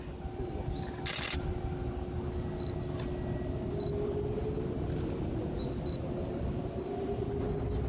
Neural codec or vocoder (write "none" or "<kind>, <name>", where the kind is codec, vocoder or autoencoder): none